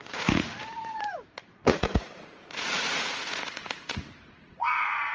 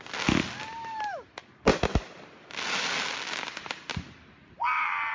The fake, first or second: first